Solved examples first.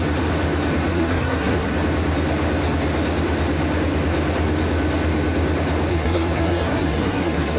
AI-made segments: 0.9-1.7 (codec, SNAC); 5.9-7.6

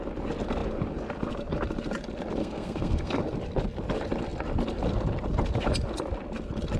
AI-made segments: 2.4-3.2 (codec, SNAC)

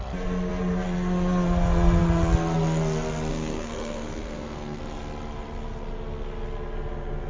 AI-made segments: 3.3-4.8 (codec, SNAC)

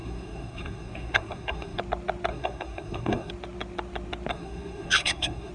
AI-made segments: 0.0-1.8 (codec, SNAC); 2.3-3.3; 4.3-5.5

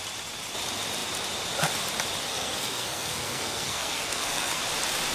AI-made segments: 2.3-4.6 (codec, SNAC)

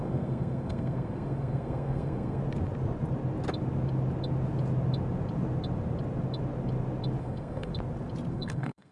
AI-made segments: 0.0-2.4 (codec, SNAC); 7.2-7.7; 8.3-8.9

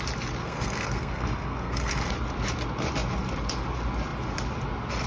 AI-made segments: 0.4-2.1 (codec, SNAC)